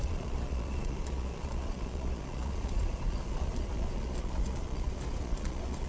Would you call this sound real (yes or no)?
no